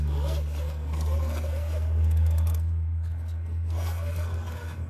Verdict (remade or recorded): remade